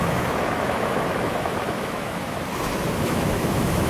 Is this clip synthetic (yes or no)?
yes